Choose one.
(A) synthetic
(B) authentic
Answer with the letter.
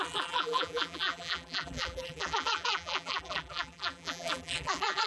A